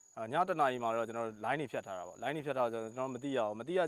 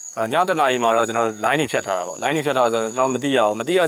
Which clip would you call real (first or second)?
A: first